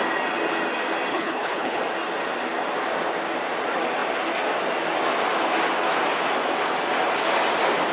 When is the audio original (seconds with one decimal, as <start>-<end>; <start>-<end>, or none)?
0.0-1.1; 1.8-7.9